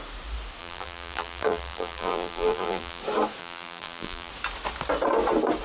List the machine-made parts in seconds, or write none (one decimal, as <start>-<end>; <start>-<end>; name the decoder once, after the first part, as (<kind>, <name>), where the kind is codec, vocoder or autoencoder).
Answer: 0.6-3.0 (vocoder, BigVGAN v2); 3.4-4.3